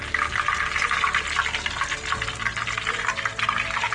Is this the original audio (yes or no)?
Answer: yes